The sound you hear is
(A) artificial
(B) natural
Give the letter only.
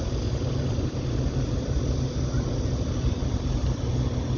B